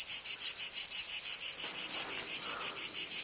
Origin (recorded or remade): recorded